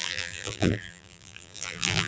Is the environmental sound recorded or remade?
remade